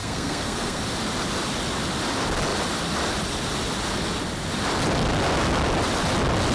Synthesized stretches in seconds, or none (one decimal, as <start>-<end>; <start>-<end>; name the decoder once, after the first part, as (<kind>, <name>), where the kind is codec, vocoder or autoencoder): 0.0-0.8 (codec, SNAC)